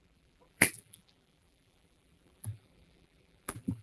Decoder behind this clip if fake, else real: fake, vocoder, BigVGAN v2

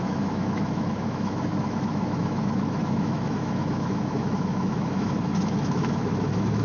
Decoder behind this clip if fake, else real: fake, autoencoder, DAC-VAE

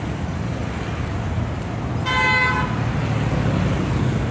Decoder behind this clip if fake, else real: real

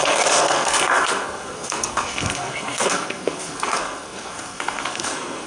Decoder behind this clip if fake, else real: fake, codec, SNAC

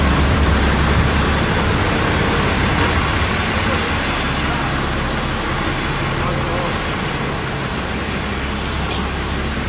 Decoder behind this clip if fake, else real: real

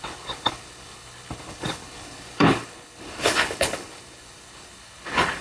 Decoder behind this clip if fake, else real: fake, codec, HILCodec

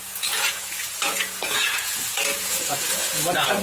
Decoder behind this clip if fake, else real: fake, vocoder, Vocos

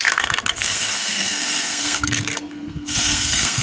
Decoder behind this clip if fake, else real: fake, codec, SNAC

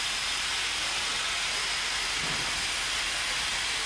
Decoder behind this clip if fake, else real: real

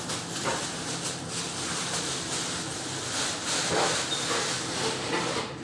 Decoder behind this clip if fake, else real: real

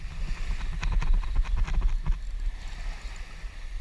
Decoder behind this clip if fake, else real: real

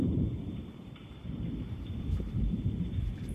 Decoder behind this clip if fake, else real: fake, vocoder, BigVGAN v2